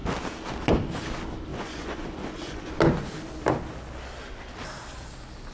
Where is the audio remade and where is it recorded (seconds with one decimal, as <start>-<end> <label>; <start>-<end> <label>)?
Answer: 0.0-1.5 recorded; 1.5-2.7 remade; 2.7-5.5 recorded